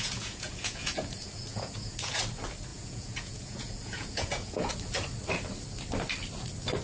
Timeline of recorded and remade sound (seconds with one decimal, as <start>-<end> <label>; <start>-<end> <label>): 0.0-2.2 remade; 2.2-2.7 recorded; 2.7-4.7 remade; 4.7-6.8 recorded